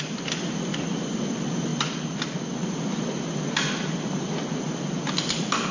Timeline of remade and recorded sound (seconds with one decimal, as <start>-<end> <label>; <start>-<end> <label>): 0.0-5.7 recorded